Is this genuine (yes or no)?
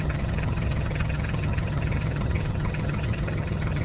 no